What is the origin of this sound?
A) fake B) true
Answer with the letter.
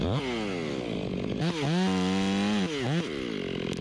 B